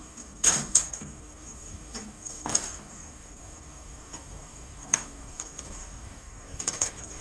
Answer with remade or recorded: remade